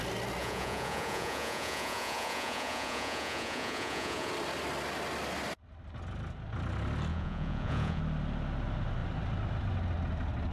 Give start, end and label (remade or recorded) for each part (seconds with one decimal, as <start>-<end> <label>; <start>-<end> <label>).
0.0-0.4 recorded; 0.4-4.3 remade; 4.3-7.1 recorded; 7.1-8.0 remade; 8.0-10.5 recorded